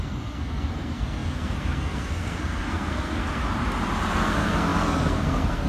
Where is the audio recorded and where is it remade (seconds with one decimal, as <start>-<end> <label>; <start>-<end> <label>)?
0.0-3.4 remade; 3.4-4.1 recorded; 4.1-5.7 remade